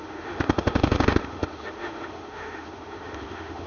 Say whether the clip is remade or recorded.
remade